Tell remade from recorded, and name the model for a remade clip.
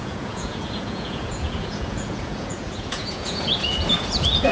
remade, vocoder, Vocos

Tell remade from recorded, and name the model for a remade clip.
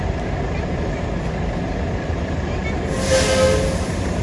recorded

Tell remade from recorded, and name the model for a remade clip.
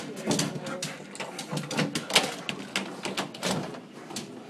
recorded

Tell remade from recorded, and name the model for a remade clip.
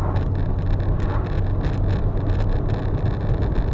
recorded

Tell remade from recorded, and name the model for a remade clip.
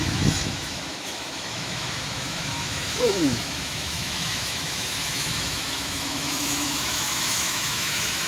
remade, autoencoder, DAC-VAE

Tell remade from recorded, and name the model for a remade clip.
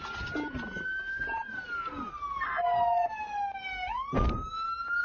recorded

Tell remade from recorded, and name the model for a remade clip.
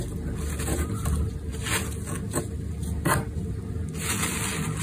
recorded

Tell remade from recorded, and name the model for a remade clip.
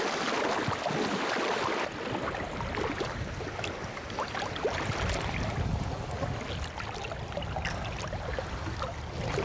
recorded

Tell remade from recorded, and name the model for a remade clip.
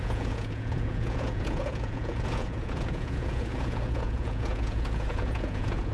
remade, vocoder, Vocos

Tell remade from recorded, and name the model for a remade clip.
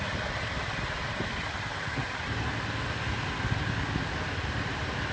recorded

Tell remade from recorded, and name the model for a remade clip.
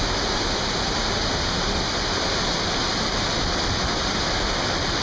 recorded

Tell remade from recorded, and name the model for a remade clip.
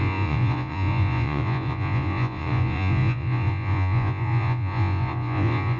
remade, vocoder, Vocos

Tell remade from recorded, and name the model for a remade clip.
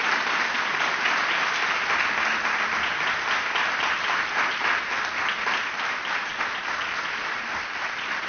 recorded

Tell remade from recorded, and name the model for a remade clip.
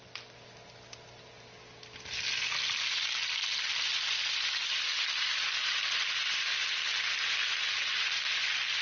recorded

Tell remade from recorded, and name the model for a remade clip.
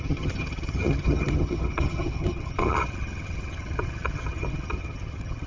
remade, vocoder, HiFi-GAN